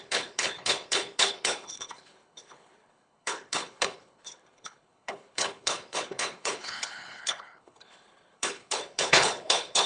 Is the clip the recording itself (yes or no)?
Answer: no